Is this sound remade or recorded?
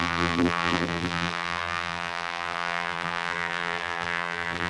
remade